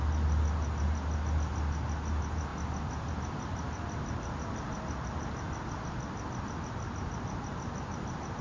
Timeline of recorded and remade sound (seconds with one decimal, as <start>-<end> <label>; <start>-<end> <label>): 0.0-8.4 recorded